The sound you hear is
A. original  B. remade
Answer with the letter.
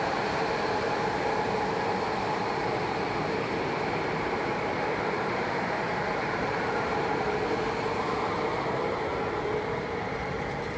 B